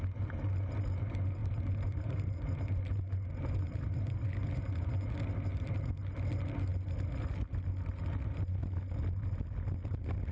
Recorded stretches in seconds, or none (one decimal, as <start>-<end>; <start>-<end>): 0.0-1.4; 5.0-10.3